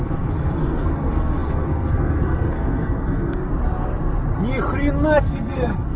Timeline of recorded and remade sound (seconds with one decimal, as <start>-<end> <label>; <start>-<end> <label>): 0.0-3.5 remade; 3.5-5.2 recorded; 5.2-6.0 remade